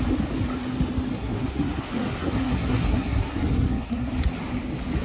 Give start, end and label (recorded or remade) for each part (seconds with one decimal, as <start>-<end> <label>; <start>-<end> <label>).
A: 0.0-1.1 recorded; 1.1-4.1 remade; 4.1-5.0 recorded

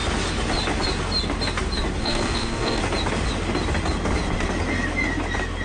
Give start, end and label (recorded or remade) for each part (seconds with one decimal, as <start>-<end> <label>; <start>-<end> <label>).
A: 0.0-2.0 recorded; 2.0-2.8 remade; 2.8-5.6 recorded

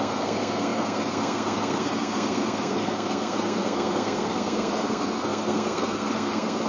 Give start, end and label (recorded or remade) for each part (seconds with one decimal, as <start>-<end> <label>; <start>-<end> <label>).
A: 0.0-6.7 remade

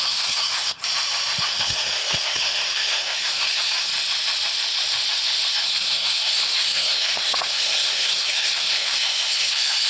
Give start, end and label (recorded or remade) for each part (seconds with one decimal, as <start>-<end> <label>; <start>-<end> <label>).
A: 0.0-0.8 remade; 0.8-1.4 recorded; 1.4-3.9 remade; 3.9-5.5 recorded; 5.5-9.9 remade

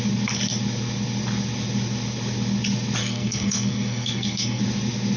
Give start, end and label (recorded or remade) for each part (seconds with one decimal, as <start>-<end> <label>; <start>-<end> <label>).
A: 0.0-3.0 recorded; 3.0-4.6 remade; 4.6-5.2 recorded

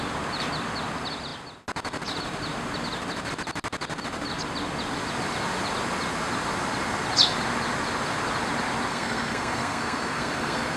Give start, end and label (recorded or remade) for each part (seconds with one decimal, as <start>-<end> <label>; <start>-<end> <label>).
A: 0.0-8.9 recorded; 8.9-10.8 remade

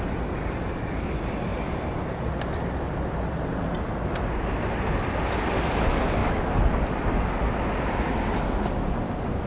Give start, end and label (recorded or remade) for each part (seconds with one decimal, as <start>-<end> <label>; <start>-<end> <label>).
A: 0.0-9.5 recorded